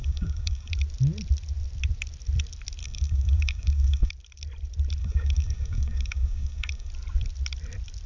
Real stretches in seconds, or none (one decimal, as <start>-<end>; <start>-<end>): 0.7-2.8; 4.1-5.0; 6.9-8.1